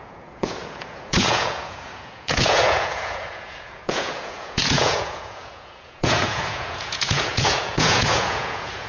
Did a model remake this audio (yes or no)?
yes